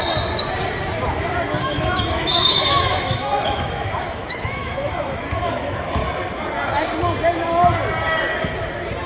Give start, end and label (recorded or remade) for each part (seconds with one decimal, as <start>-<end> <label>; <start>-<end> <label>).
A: 0.0-1.6 recorded; 1.6-5.9 remade; 5.9-9.1 recorded